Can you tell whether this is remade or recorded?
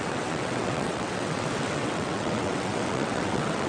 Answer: remade